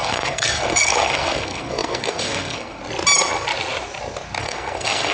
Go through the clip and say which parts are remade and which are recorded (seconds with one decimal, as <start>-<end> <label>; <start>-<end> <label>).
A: 0.0-2.8 remade; 2.8-4.4 recorded; 4.4-5.1 remade

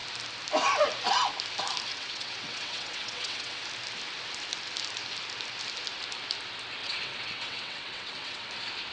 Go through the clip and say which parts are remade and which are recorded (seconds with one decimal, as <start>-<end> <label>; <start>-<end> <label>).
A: 0.0-1.9 recorded; 1.9-3.6 remade; 3.6-6.8 recorded; 6.8-8.5 remade; 8.5-8.9 recorded

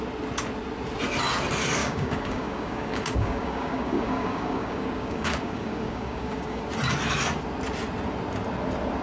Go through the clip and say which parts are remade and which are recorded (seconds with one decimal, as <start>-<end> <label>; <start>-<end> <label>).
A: 0.0-1.8 recorded; 1.8-6.6 remade; 6.6-9.0 recorded

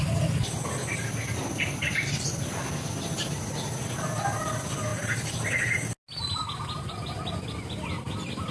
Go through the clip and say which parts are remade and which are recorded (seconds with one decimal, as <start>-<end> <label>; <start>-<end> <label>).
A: 0.0-8.5 recorded